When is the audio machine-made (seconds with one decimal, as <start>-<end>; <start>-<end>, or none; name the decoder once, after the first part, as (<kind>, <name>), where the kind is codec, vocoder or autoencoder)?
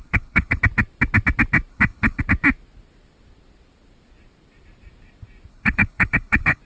0.0-0.6 (codec, HILCodec); 1.7-2.2; 5.5-6.6